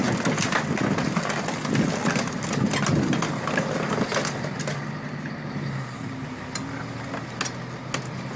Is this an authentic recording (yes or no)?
yes